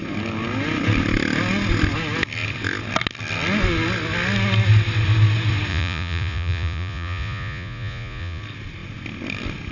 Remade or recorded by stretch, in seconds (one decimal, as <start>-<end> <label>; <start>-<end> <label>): 0.0-5.7 recorded; 5.7-8.4 remade; 8.4-9.7 recorded